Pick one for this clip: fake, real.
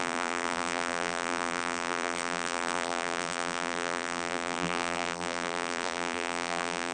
fake